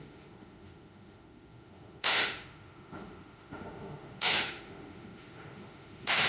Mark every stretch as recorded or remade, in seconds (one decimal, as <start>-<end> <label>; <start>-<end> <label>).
0.0-6.3 remade